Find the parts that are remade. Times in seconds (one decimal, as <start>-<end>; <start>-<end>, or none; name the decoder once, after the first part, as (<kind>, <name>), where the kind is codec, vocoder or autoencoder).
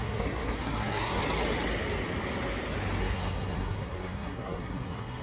0.0-1.2 (codec, SNAC); 3.0-5.2